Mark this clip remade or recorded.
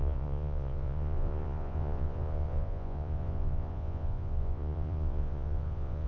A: remade